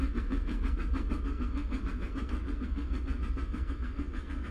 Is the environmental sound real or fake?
fake